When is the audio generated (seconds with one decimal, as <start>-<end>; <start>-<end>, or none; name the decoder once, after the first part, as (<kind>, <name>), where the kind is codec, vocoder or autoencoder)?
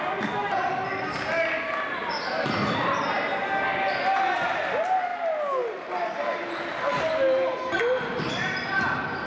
none